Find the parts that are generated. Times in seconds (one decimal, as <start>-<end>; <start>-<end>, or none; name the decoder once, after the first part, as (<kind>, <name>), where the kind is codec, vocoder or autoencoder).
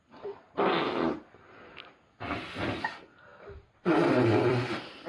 3.3-5.1 (vocoder, BigVGAN v2)